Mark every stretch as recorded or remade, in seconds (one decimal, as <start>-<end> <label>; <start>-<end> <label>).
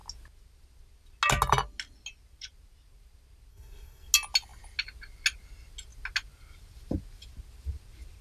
0.0-3.5 recorded; 3.5-4.1 remade; 4.1-8.2 recorded